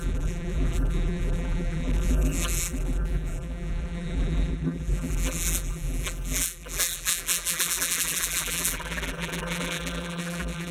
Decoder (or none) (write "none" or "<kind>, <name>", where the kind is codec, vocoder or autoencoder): vocoder, BigVGAN v2